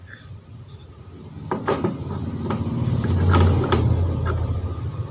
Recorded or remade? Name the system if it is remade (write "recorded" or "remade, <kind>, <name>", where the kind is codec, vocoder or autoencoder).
recorded